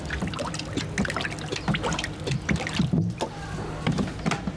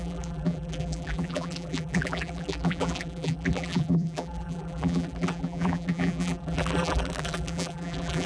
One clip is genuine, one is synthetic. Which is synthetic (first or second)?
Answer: second